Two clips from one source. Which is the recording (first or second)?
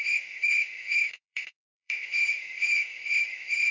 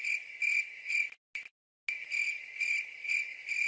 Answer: second